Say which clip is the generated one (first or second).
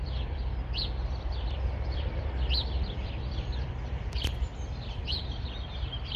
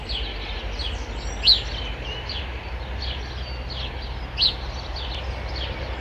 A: first